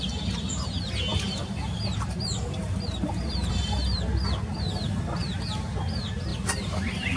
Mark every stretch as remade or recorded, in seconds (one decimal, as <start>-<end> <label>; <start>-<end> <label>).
0.0-1.1 recorded; 1.1-3.5 remade; 3.5-6.3 recorded; 6.3-7.2 remade